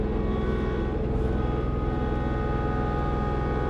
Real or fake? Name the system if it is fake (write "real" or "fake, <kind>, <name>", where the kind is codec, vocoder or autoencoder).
real